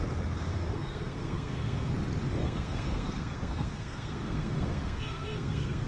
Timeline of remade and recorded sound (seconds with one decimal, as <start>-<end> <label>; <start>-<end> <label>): 0.0-0.5 recorded; 0.5-1.9 remade; 1.9-2.4 recorded; 2.4-5.9 remade